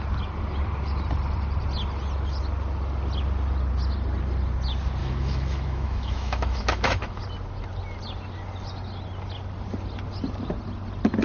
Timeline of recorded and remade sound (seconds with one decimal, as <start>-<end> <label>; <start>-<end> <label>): 0.0-5.0 recorded; 5.0-7.2 remade; 7.2-11.2 recorded